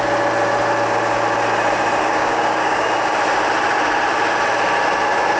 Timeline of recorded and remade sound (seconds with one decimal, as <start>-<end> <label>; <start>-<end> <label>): 0.0-2.0 recorded; 2.0-2.9 remade; 2.9-5.4 recorded